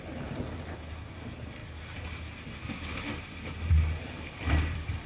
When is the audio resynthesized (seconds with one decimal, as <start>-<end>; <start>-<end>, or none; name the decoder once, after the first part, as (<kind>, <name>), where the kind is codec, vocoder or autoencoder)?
none